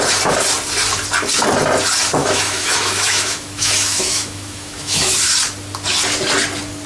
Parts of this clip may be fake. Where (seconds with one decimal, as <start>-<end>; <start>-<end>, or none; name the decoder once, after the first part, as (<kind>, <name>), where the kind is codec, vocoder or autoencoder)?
2.2-5.1 (autoencoder, DAC-VAE)